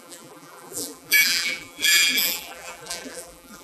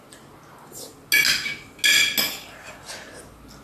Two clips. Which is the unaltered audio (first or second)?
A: second